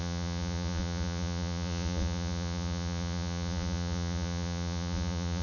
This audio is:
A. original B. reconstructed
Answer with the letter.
B